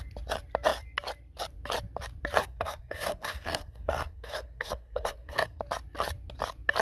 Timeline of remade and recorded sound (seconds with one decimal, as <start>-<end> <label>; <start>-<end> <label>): 0.0-2.4 recorded; 2.4-5.6 remade; 5.6-6.8 recorded